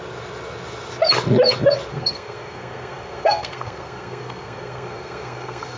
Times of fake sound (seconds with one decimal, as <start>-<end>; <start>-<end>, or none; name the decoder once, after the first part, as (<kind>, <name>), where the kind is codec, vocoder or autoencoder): 1.9-5.8 (codec, SNAC)

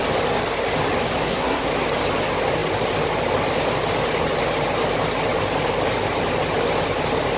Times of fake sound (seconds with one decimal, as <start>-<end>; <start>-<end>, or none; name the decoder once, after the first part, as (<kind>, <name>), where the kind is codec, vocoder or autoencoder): 1.2-1.7 (codec, SNAC)

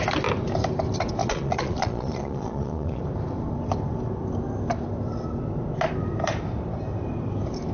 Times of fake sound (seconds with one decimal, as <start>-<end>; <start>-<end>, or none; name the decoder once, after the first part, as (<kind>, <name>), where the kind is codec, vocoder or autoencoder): 1.2-3.0 (vocoder, Vocos)

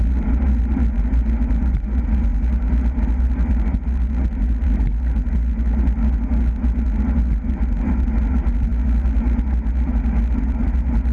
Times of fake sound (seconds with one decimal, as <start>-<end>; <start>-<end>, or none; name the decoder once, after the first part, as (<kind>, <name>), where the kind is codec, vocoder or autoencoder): none

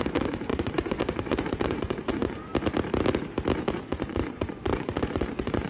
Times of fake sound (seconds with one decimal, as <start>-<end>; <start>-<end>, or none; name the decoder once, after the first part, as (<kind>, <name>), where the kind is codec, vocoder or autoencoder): 0.0-2.5 (vocoder, Vocos); 3.7-5.7

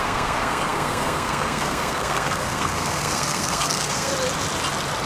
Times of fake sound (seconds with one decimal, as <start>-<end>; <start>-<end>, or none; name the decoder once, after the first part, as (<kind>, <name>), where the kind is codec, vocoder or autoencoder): 0.0-4.1 (codec, SNAC)

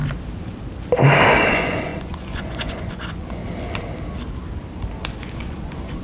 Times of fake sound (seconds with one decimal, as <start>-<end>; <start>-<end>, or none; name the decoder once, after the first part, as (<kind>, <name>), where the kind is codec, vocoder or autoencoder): 1.5-3.4 (vocoder, Vocos); 5.2-6.0

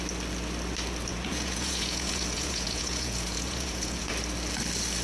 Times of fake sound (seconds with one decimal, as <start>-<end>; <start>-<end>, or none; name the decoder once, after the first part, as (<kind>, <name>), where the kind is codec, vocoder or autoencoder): 1.1-4.1 (vocoder, Vocos)